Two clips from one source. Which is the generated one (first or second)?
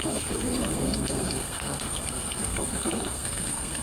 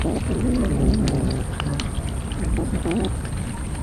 first